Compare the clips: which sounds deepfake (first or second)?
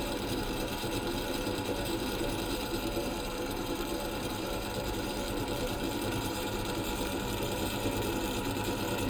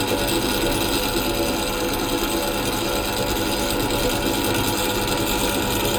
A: first